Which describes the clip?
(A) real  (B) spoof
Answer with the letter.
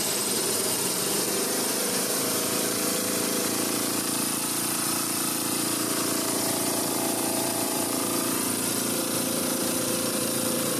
B